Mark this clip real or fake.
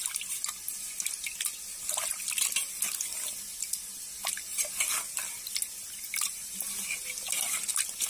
real